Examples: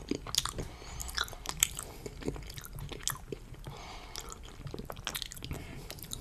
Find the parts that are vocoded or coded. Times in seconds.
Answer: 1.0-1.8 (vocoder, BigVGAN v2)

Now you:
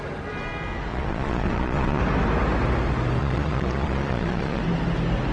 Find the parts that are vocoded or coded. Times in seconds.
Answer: 0.9-2.0 (vocoder, Vocos); 3.2-4.6

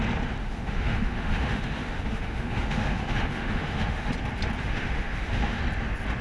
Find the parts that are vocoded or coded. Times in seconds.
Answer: 0.4-4.1 (autoencoder, DAC-VAE); 4.6-5.6

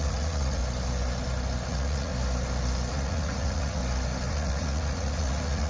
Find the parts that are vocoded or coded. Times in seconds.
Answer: 0.0-0.6 (vocoder, Vocos); 1.7-2.1; 2.9-3.8; 4.3-5.7

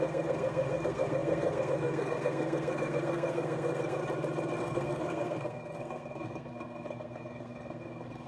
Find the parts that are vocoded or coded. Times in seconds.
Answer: 0.0-4.0 (codec, SNAC); 4.6-8.3

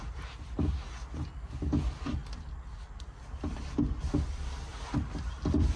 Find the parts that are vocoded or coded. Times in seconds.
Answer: none